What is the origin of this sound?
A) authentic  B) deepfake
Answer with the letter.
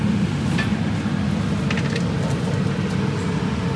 A